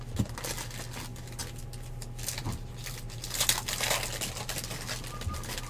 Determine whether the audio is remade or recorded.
recorded